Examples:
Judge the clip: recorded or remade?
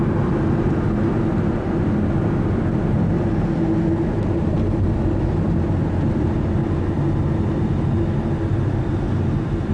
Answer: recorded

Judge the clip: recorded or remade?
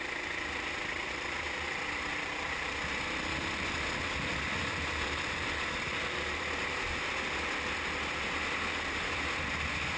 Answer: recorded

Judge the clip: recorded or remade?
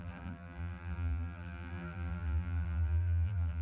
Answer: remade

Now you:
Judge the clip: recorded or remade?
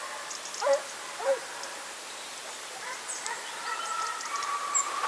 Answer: remade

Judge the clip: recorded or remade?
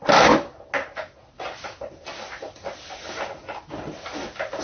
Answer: recorded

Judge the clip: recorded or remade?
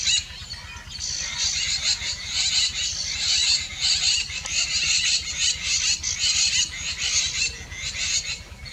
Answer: recorded